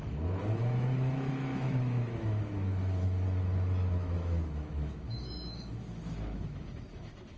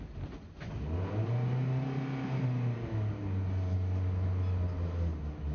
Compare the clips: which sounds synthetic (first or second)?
first